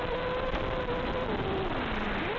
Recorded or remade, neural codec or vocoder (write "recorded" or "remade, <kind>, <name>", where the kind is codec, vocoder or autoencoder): recorded